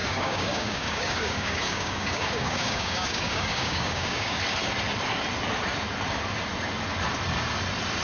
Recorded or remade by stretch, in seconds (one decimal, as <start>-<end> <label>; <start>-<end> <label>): 0.0-4.4 remade; 4.4-8.0 recorded